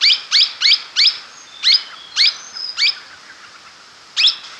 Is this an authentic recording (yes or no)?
yes